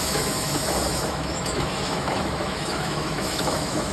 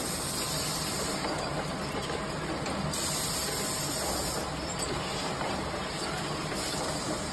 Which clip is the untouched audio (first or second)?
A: second